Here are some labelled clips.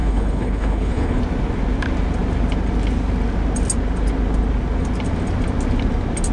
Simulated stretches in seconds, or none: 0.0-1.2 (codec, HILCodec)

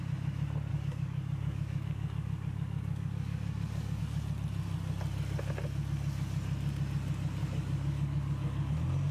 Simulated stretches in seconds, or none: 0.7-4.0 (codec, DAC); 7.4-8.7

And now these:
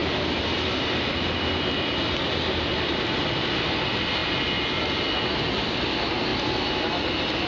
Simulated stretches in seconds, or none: none

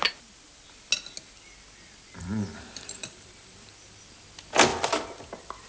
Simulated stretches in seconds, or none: 2.2-3.7 (vocoder, BigVGAN v2); 4.7-5.7

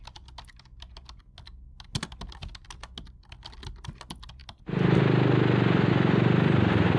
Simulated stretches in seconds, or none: none

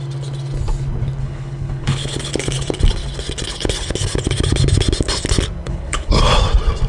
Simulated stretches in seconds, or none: 1.2-2.3 (codec, HILCodec); 5.7-6.2

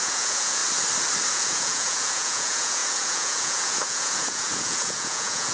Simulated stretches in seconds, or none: 0.0-0.6 (vocoder, Vocos); 1.3-5.5